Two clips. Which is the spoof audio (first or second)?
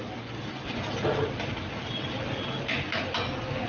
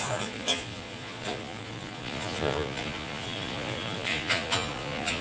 second